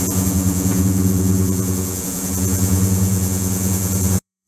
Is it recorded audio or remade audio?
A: remade